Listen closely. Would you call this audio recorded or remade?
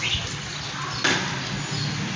recorded